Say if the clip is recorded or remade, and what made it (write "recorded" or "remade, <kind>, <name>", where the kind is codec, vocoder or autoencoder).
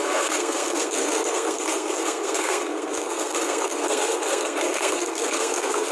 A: remade, codec, SNAC